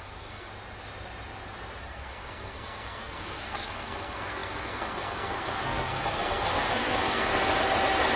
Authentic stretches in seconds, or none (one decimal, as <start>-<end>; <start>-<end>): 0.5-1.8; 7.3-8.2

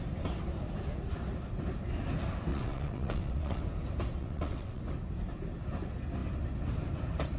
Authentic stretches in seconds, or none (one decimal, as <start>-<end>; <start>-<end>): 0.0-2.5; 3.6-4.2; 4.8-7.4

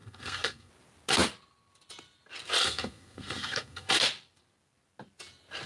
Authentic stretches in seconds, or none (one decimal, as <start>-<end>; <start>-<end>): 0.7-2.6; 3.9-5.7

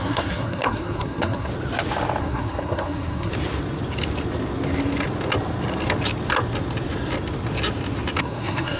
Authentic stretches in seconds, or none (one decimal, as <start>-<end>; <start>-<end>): 1.5-2.2; 3.3-8.2